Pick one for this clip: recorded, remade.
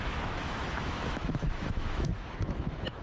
remade